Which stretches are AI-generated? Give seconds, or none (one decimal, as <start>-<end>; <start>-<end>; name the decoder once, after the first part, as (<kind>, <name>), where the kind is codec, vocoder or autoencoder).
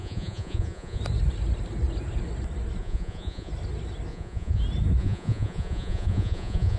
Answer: 0.0-1.0 (vocoder, Vocos); 2.8-3.5; 4.1-4.6; 5.0-6.8